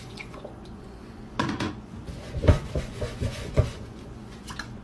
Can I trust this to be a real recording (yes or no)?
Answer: no